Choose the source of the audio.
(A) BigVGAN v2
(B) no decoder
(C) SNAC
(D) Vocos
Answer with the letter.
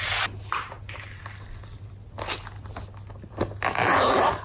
B